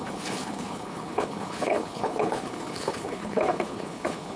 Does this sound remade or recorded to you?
remade